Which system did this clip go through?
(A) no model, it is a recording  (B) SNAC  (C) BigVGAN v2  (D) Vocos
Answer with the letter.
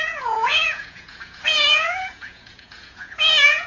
D